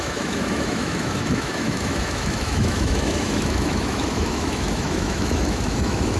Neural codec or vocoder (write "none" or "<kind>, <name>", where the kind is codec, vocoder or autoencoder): autoencoder, DAC-VAE